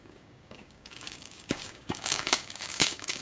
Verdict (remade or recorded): remade